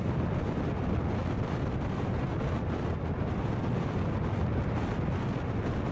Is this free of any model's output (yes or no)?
yes